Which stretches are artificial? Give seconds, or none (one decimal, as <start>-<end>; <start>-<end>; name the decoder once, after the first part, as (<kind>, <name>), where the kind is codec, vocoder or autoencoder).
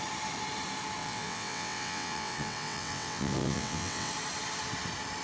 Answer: 1.0-4.1 (vocoder, WaveNeXt)